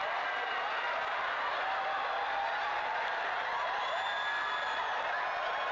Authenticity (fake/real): real